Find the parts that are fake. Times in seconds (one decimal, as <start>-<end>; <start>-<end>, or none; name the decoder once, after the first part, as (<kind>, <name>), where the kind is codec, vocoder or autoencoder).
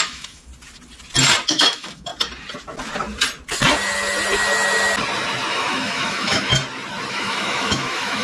0.0-0.5 (autoencoder, DAC-VAE); 1.5-2.1; 5.5-6.5; 7.1-8.2